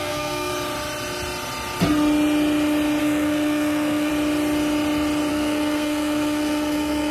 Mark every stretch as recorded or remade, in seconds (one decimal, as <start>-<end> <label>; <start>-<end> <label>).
0.0-0.5 remade; 0.5-3.0 recorded; 3.0-4.1 remade; 4.1-5.3 recorded; 5.3-7.1 remade